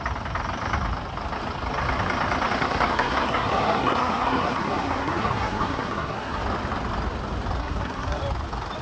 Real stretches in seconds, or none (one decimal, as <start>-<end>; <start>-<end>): 0.0-2.6; 6.4-7.6; 8.2-8.8